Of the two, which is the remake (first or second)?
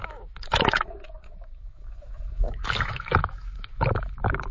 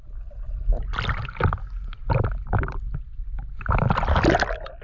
first